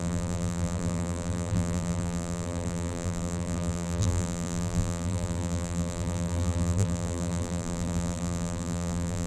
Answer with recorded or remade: remade